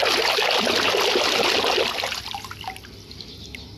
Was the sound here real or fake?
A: real